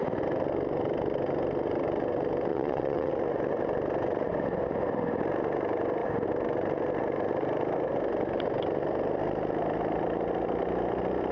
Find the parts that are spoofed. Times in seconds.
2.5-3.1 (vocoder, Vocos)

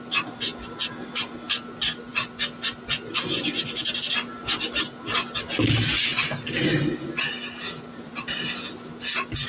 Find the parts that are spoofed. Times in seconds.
none

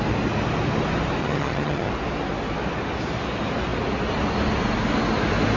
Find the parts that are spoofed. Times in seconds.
1.2-1.9 (vocoder, HiFi-GAN)

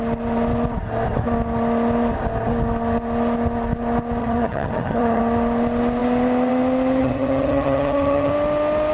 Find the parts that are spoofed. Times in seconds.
4.2-5.2 (vocoder, HiFi-GAN); 7.0-8.3

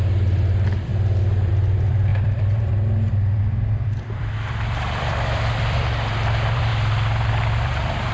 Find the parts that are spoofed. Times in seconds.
0.0-0.9 (vocoder, BigVGAN v2); 1.5-6.7; 7.3-8.1

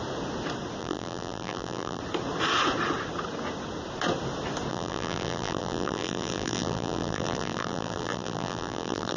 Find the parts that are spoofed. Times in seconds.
0.8-2.0 (vocoder, BigVGAN v2); 4.7-9.2